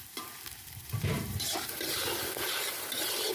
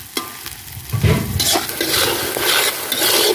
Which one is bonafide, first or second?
second